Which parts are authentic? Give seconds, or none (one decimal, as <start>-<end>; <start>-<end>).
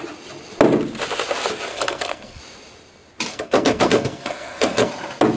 0.0-1.7; 2.4-3.3; 4.9-5.4